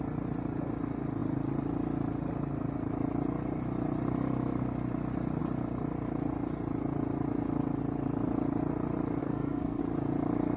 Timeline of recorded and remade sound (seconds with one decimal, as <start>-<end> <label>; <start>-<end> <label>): 0.0-9.2 recorded; 9.2-9.8 remade; 9.8-10.6 recorded